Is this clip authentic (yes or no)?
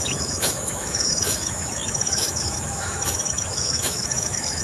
no